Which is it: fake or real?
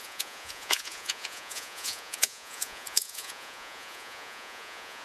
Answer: fake